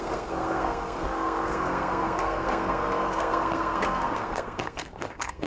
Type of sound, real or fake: fake